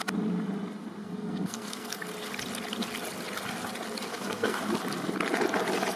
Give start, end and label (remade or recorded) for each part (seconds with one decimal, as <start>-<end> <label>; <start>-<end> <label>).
0.0-1.0 recorded; 1.0-2.1 remade; 2.1-4.1 recorded; 4.1-4.6 remade; 4.6-6.0 recorded